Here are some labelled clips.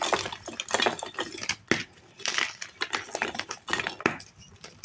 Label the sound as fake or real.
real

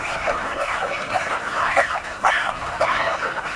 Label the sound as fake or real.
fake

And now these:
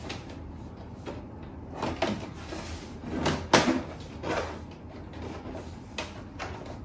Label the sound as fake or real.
real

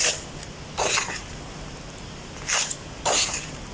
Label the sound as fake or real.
real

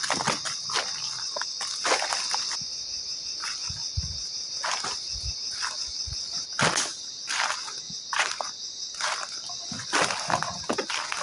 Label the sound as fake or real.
real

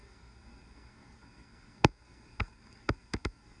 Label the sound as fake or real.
fake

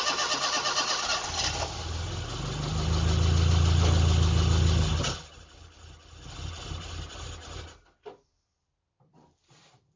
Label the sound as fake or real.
real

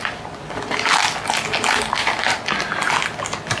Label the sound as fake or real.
real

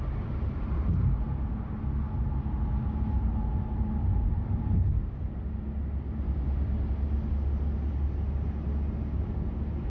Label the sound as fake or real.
real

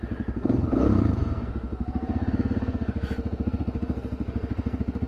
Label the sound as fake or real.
fake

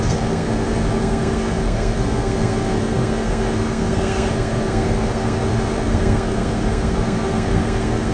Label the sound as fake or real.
fake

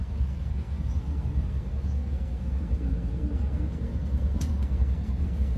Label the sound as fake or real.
fake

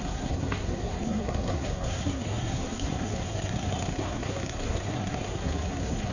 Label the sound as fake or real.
fake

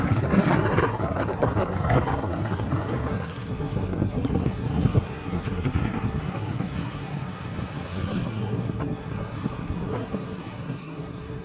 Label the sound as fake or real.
fake